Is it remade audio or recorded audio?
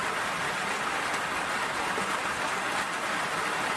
recorded